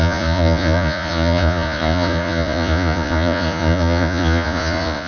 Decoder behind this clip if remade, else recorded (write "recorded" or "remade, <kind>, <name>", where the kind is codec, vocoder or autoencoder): remade, vocoder, Vocos